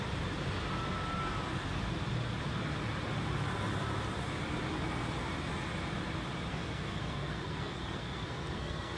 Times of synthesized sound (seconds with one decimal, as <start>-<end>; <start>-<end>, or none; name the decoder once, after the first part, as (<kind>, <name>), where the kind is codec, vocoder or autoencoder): 6.5-9.0 (codec, SNAC)